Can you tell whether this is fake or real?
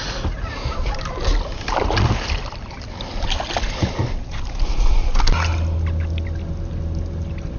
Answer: real